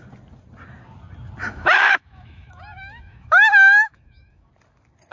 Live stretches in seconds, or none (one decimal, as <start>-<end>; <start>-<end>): 0.0-1.4; 4.5-5.1